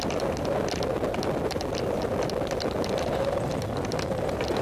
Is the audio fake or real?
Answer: real